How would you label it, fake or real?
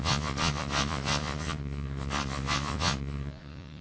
fake